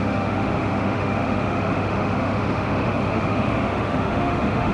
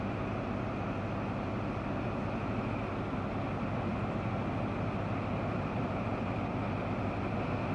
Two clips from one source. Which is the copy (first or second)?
first